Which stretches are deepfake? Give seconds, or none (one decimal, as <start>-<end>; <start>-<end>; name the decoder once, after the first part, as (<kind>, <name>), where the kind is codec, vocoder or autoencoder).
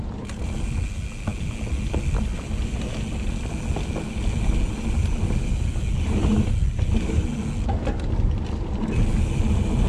none